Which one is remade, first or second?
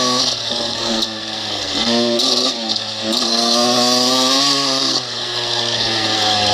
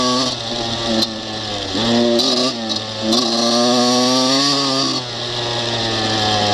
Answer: first